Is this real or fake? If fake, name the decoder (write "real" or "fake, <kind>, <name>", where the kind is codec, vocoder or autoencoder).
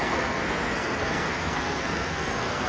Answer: fake, codec, SNAC